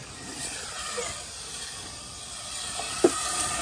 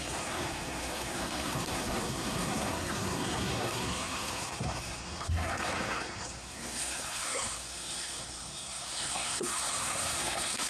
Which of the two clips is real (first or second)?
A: first